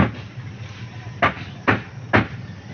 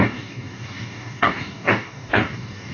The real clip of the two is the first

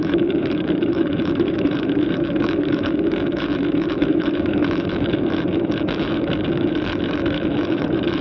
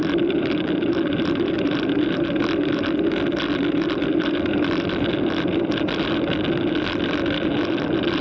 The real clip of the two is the second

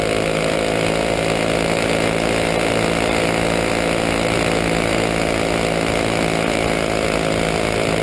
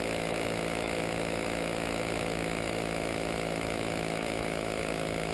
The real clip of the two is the first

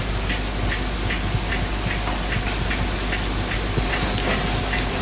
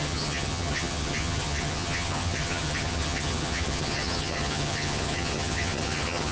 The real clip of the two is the first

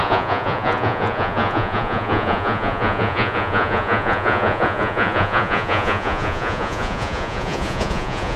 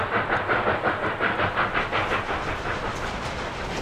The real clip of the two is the second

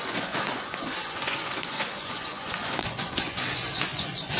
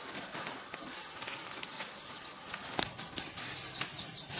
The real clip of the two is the second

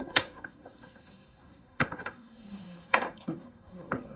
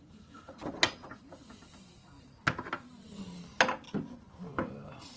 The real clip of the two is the second